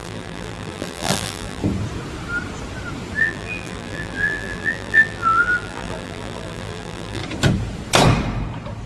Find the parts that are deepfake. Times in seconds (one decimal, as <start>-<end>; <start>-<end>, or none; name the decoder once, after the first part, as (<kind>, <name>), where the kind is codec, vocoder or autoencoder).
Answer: 0.0-1.6 (vocoder, BigVGAN v2); 3.2-7.2